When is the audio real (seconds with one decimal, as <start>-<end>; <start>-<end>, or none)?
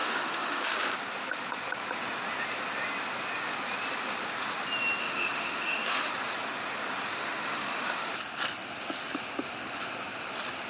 0.6-5.0; 6.1-7.1; 8.1-10.7